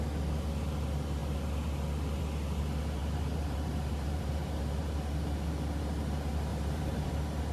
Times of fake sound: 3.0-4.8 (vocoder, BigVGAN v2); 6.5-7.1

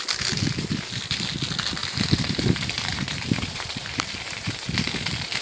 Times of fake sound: 1.8-4.5 (vocoder, BigVGAN v2)